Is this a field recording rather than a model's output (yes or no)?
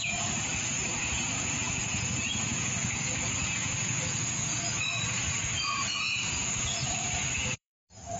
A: no